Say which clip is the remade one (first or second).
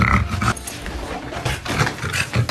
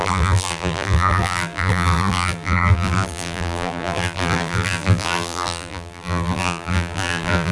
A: second